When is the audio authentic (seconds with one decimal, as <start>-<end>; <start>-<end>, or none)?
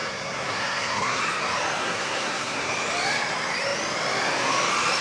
1.2-1.8; 2.7-5.0